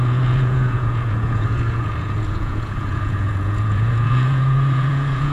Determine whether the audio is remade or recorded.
remade